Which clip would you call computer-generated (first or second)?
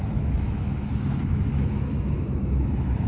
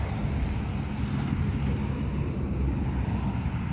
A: first